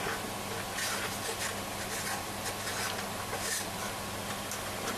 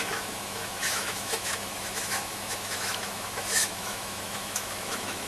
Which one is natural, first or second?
first